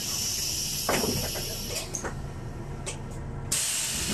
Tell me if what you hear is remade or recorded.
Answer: recorded